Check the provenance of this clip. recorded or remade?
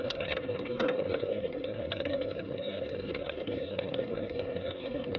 remade